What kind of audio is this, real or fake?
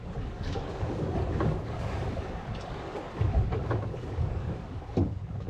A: fake